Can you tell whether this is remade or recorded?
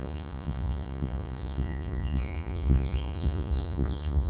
remade